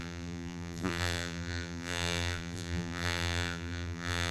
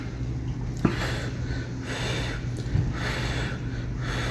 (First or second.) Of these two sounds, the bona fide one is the second